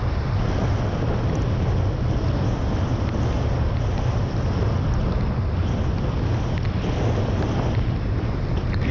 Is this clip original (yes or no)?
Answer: yes